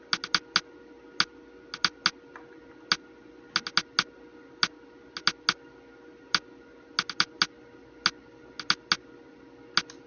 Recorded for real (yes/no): yes